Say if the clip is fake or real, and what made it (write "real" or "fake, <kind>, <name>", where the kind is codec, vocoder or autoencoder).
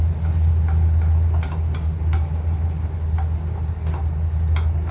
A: real